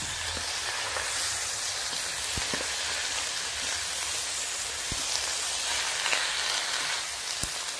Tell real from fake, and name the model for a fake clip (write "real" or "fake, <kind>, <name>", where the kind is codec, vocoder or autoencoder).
real